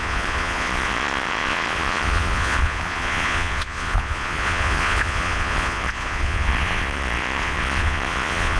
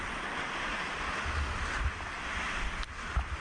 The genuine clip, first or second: second